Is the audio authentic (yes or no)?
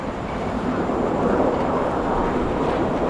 no